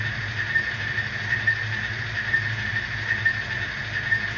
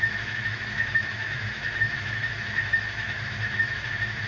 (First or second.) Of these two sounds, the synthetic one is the second